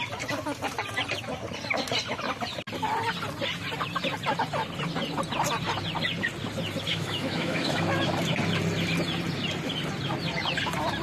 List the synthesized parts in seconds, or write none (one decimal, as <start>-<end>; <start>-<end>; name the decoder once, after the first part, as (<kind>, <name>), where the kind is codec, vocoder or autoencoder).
6.9-8.1 (autoencoder, DAC-VAE)